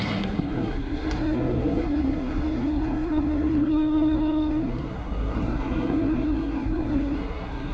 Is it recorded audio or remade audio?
remade